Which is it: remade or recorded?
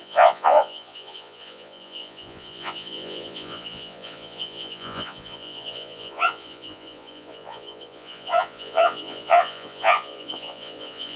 remade